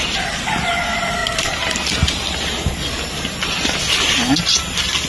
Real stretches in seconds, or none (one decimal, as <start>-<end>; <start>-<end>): 0.0-5.1